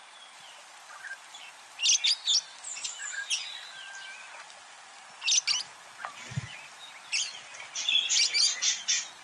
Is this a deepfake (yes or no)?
no